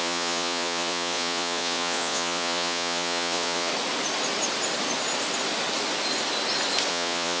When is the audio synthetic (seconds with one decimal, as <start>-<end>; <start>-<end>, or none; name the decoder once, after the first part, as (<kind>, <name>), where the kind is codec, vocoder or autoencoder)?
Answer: 0.0-3.7 (vocoder, Vocos); 6.9-7.4